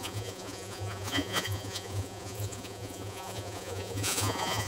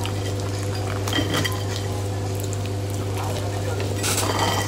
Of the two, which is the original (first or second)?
second